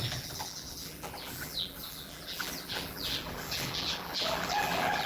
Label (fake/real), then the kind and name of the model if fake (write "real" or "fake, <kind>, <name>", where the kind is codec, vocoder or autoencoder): fake, vocoder, BigVGAN v2